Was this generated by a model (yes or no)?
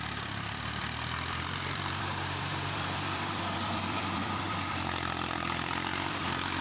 yes